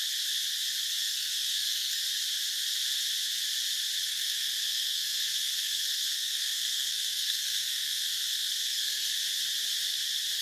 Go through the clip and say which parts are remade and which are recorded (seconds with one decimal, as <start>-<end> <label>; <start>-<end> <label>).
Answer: 0.0-1.0 recorded; 1.0-2.0 remade; 2.0-4.1 recorded; 4.1-9.1 remade; 9.1-10.4 recorded